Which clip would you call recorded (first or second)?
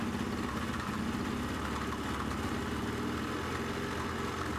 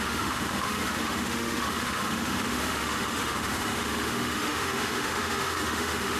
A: first